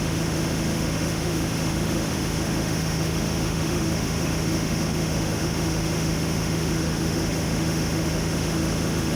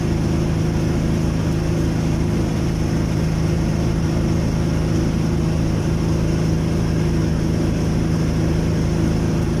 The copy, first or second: first